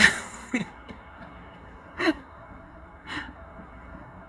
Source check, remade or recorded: remade